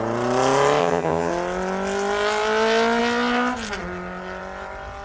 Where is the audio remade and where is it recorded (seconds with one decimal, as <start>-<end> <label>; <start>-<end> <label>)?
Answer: 0.0-0.8 recorded; 0.8-1.3 remade; 1.3-5.0 recorded